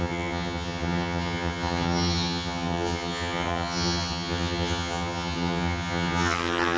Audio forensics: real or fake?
fake